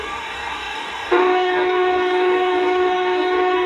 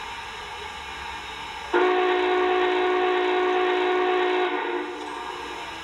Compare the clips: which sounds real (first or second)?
second